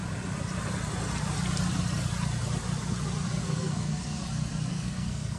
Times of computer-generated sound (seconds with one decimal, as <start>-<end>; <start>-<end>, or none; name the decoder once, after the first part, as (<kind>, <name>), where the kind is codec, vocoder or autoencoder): 3.4-4.2 (codec, SNAC); 4.7-5.4